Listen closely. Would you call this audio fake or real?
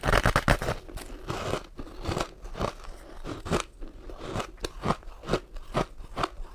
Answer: real